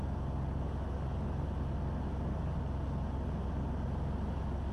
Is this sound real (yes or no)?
yes